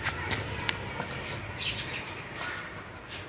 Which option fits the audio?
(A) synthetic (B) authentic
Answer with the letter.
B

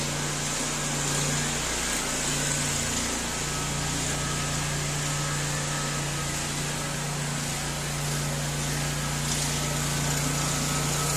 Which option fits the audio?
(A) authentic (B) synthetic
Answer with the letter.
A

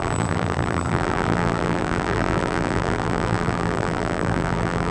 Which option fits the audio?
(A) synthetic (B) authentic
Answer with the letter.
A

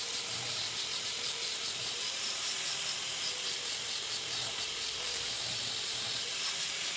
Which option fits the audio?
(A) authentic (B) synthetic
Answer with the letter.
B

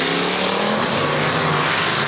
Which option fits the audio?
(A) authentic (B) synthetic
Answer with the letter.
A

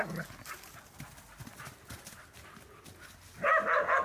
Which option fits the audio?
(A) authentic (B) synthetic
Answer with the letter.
A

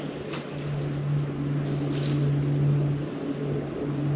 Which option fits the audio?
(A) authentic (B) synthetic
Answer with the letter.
A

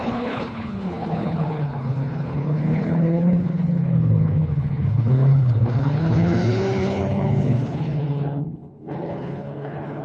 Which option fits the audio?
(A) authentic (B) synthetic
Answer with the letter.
B